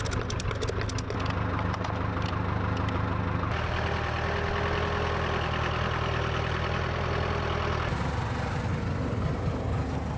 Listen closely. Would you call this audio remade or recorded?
recorded